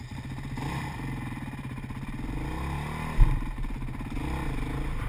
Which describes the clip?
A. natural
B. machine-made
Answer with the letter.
A